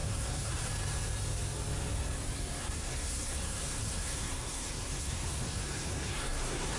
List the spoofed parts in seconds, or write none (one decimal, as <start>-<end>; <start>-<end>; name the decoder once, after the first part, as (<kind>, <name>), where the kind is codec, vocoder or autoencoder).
0.0-0.7 (codec, SNAC); 2.6-6.8